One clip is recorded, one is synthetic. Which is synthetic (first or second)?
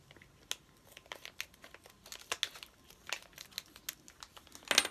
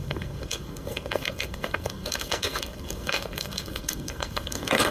second